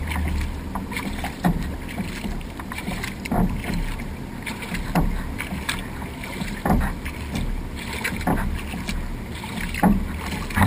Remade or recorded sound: recorded